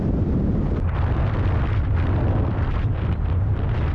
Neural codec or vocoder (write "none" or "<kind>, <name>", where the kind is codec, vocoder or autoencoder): vocoder, BigVGAN v2